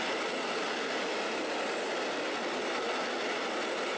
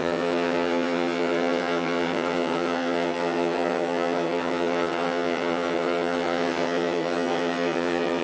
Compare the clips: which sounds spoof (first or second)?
second